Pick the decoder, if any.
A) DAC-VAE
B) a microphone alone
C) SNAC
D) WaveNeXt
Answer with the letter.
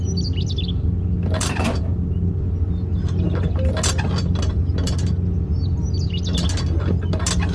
B